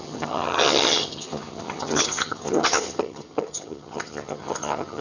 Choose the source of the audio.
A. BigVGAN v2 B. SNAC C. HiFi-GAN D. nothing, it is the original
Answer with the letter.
C